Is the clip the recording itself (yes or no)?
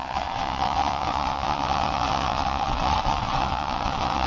no